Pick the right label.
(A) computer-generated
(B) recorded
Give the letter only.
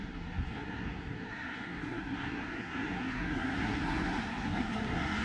A